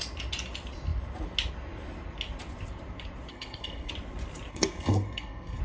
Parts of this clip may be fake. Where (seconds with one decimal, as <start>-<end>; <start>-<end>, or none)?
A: 3.3-3.9; 4.5-5.6